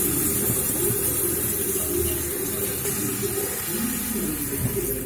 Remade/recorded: recorded